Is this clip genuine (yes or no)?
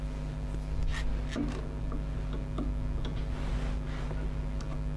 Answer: yes